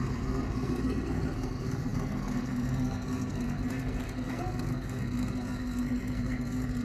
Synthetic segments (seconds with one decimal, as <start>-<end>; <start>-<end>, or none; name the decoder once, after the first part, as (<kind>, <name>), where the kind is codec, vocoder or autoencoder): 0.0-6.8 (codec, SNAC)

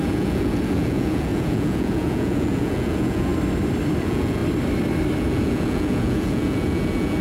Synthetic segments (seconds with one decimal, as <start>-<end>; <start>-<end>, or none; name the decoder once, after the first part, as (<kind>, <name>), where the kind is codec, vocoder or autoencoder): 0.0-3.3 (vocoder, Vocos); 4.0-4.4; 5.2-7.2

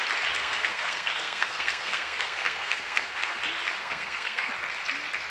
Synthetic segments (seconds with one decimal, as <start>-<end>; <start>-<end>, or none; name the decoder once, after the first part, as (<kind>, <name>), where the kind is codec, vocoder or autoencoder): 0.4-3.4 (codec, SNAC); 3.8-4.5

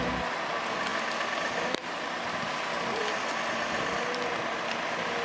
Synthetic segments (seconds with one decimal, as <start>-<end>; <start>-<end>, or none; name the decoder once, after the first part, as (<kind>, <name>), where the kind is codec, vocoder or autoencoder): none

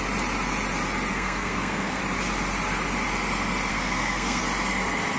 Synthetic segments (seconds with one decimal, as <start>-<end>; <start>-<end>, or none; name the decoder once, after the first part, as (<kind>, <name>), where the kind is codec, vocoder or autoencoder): 1.1-2.0 (codec, SNAC); 3.7-4.4

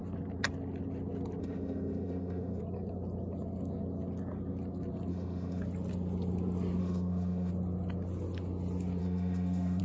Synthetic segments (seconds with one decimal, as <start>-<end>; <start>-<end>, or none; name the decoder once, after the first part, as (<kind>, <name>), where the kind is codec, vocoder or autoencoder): 1.4-2.6 (autoencoder, DAC-VAE); 5.1-5.6; 6.8-7.5; 9.0-9.8